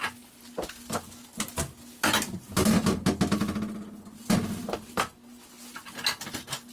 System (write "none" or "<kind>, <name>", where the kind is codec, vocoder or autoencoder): none